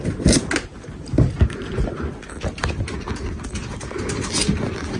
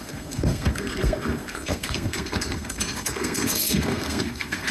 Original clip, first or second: first